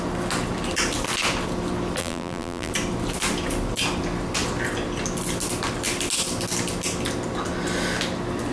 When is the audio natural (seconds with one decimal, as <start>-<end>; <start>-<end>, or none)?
0.0-2.0; 2.7-8.5

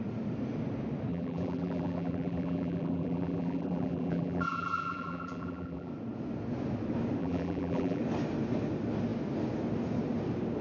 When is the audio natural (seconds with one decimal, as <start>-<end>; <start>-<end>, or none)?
0.0-1.1; 5.9-7.2; 8.0-10.6

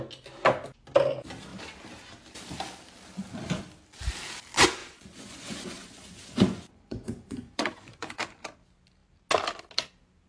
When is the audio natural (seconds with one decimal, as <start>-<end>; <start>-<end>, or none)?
0.0-4.8; 8.4-10.3

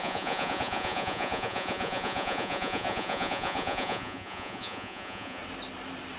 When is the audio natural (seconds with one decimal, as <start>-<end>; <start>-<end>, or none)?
5.4-6.2